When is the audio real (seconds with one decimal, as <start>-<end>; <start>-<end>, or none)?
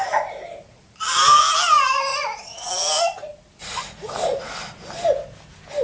0.0-2.1; 2.7-3.6; 4.4-5.8